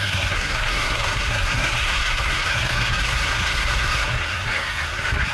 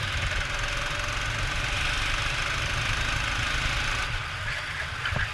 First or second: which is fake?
first